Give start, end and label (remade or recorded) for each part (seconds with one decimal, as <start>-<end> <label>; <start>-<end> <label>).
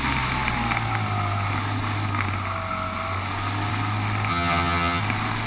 0.0-4.3 recorded; 4.3-5.0 remade; 5.0-5.5 recorded